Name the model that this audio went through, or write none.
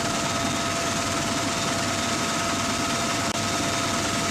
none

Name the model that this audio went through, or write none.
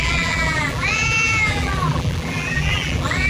vocoder, BigVGAN v2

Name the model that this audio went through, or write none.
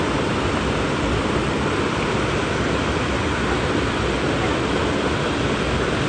none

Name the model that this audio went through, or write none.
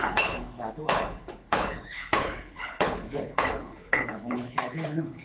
codec, HILCodec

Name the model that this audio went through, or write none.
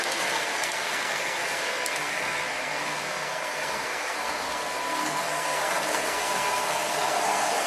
codec, SNAC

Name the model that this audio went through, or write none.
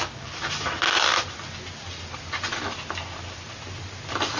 none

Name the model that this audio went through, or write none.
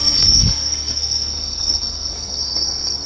codec, SNAC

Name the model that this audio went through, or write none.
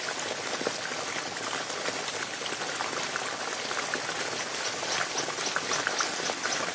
none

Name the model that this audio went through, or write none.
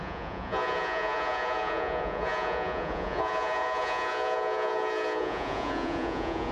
vocoder, Vocos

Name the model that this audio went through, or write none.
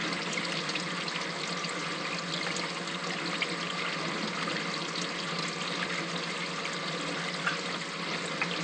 none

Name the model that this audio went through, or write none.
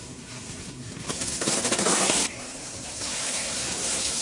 codec, SNAC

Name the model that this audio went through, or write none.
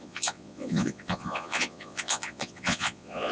vocoder, Vocos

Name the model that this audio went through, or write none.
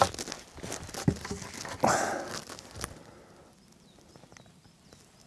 none